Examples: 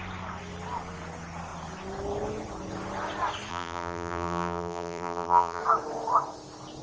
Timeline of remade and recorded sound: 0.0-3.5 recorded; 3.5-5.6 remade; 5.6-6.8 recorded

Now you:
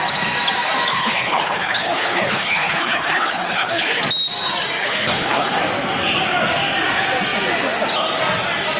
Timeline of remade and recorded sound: 0.0-0.9 recorded; 0.9-4.0 remade; 4.0-4.8 recorded; 4.8-5.6 remade; 5.6-8.8 recorded

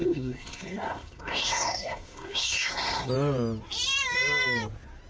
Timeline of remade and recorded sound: 0.0-3.1 remade; 3.1-5.1 recorded

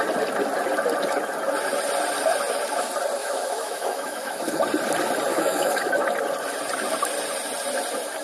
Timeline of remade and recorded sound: 0.0-3.2 recorded; 3.2-4.6 remade; 4.6-5.3 recorded; 5.3-5.9 remade; 5.9-8.2 recorded